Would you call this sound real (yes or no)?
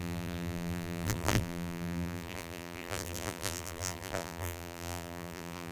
no